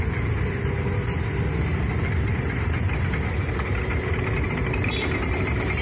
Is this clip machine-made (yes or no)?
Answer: no